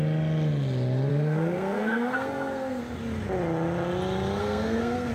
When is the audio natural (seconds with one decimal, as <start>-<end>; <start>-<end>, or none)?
0.0-1.1; 2.8-4.4